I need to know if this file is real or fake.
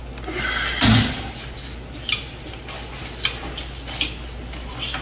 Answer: real